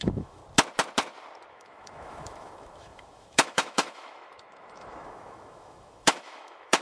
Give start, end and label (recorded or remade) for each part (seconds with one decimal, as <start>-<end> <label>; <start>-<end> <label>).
0.0-0.4 remade; 0.4-1.5 recorded; 1.5-6.8 remade